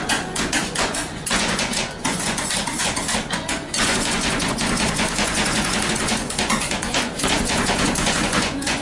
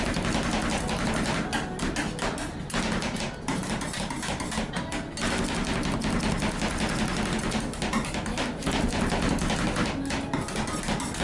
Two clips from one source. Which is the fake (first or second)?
first